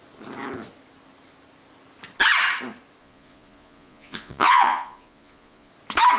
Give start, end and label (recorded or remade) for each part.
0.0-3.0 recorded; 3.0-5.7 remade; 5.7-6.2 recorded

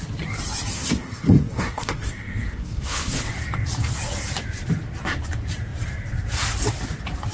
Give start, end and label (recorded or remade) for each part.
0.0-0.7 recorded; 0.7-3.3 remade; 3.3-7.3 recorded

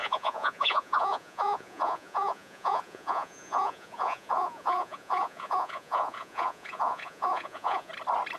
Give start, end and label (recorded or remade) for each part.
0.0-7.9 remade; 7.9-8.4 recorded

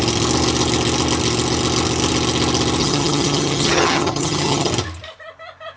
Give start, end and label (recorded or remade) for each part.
0.0-2.8 recorded; 2.8-4.7 remade; 4.7-5.8 recorded

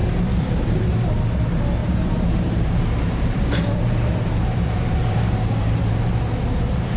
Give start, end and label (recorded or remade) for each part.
0.0-1.2 remade; 1.2-1.8 recorded; 1.8-6.0 remade; 6.0-7.0 recorded

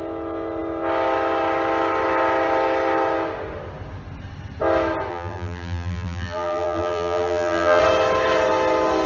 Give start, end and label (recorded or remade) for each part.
0.0-5.1 recorded; 5.1-7.8 remade; 7.8-9.1 recorded